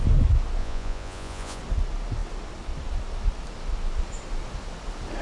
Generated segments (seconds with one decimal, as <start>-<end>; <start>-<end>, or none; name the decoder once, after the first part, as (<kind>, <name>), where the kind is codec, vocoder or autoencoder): 0.6-1.6 (vocoder, Vocos)

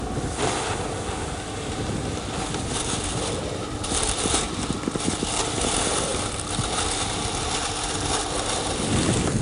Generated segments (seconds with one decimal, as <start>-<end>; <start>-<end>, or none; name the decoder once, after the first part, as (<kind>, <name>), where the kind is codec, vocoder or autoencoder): none

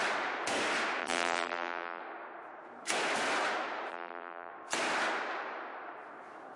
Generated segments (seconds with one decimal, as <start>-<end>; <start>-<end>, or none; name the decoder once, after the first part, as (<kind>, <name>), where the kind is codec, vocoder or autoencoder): 1.0-2.0 (vocoder, BigVGAN v2); 3.9-4.5